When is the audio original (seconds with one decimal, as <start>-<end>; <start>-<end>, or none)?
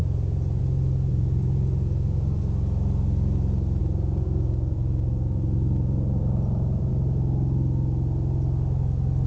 0.6-1.1; 2.4-3.8; 6.9-9.3